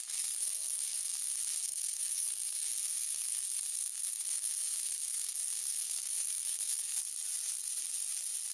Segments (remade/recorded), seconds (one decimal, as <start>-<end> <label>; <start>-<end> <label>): 0.0-7.0 remade; 7.0-8.5 recorded